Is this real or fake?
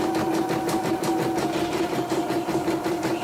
real